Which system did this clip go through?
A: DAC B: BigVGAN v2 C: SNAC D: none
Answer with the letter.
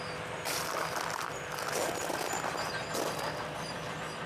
D